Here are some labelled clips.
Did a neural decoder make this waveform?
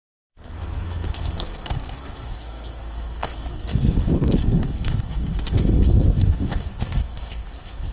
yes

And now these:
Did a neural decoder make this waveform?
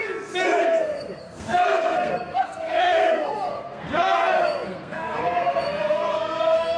yes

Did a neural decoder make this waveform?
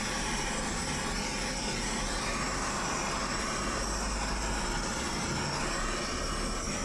no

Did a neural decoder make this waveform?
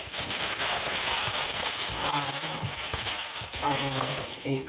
yes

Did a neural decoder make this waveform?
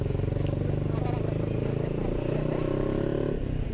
no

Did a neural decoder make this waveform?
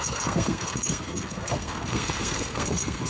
yes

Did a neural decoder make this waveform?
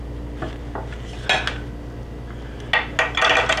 no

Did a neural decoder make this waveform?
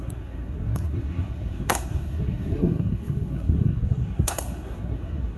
yes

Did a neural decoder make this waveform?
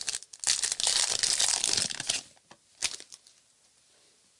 no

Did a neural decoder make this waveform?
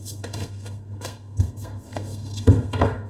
yes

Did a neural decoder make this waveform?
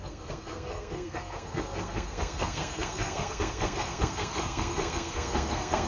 yes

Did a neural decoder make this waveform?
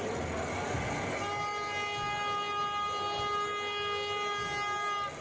no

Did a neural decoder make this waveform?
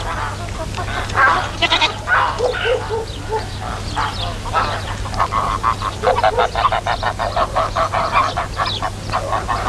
no